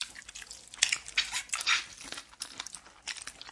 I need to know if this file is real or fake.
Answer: real